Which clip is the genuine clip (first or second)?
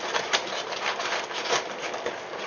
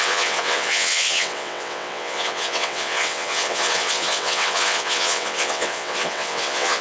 first